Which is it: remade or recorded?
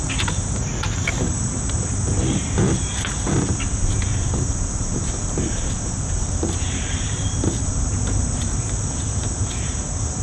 remade